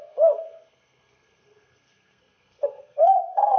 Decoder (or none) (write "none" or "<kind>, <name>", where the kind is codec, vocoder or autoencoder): codec, SNAC